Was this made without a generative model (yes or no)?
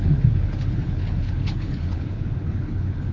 no